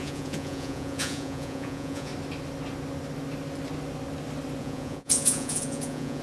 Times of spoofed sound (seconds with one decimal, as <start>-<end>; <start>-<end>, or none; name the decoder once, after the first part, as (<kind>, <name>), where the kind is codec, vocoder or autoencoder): 0.0-2.1 (vocoder, Vocos); 4.6-6.2